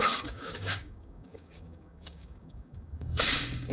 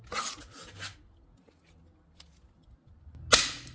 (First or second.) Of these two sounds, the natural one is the second